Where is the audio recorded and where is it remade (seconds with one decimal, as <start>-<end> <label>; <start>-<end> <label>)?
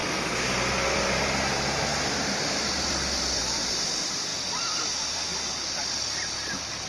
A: 0.0-0.7 recorded; 0.7-4.3 remade; 4.3-5.6 recorded; 5.6-6.9 remade